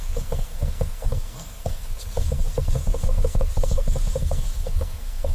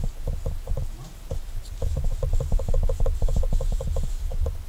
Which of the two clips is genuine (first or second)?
second